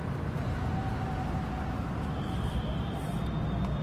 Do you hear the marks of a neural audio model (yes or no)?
no